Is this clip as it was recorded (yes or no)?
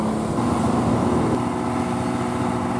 yes